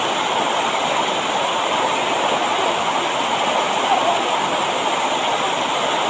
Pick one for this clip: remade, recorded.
recorded